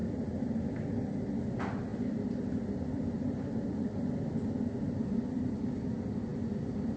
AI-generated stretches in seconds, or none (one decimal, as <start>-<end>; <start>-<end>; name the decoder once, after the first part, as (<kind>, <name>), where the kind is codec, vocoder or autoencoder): 0.0-0.7 (vocoder, BigVGAN v2); 1.9-5.6

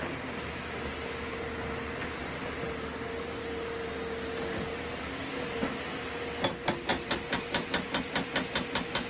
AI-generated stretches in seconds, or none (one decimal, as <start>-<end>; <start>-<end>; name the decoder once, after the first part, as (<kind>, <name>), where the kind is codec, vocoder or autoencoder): 6.9-7.6 (vocoder, BigVGAN v2)

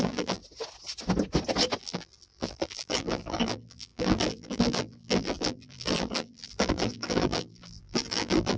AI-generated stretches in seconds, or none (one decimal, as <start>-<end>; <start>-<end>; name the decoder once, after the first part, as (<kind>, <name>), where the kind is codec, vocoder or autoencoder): 0.0-0.4 (vocoder, BigVGAN v2); 1.8-8.6

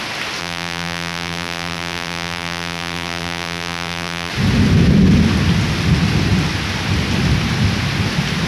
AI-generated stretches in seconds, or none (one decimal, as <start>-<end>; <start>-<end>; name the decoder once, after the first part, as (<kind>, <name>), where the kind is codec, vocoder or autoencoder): 0.4-4.3 (vocoder, BigVGAN v2)

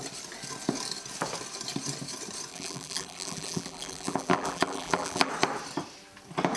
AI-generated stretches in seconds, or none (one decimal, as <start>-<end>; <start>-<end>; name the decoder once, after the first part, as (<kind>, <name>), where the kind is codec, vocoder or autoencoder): 2.5-5.3 (vocoder, BigVGAN v2)

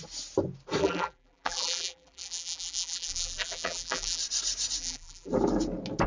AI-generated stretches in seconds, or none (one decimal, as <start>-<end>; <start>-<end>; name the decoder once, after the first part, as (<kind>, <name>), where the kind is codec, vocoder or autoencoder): 0.8-4.2 (vocoder, BigVGAN v2); 4.8-5.3

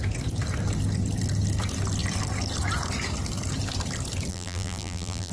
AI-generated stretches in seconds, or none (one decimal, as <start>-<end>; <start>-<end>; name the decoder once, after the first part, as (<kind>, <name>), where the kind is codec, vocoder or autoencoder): 4.3-5.3 (vocoder, BigVGAN v2)

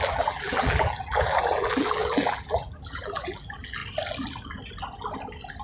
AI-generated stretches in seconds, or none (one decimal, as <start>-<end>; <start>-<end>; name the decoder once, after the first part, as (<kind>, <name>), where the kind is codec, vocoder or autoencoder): 0.0-3.8 (vocoder, BigVGAN v2)